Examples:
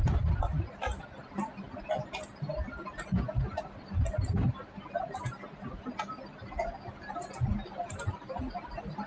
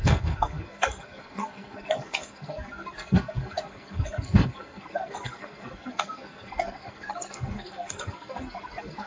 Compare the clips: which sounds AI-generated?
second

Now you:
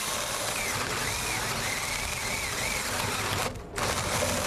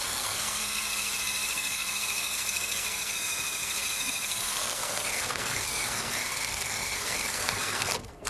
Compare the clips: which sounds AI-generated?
second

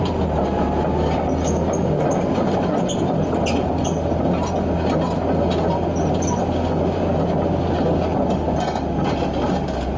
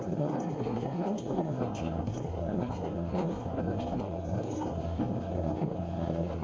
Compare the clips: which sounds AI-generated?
second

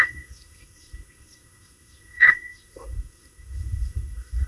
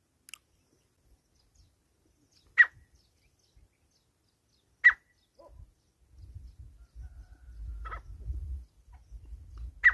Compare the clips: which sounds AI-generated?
first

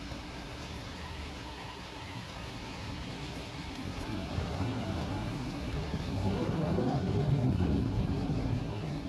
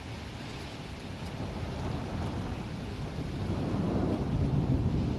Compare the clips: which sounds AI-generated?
first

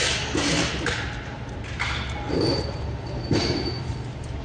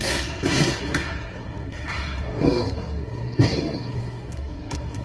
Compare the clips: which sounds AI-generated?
second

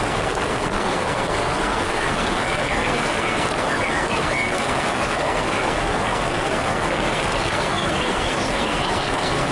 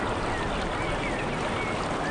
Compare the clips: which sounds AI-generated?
first